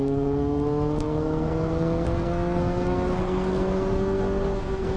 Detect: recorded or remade remade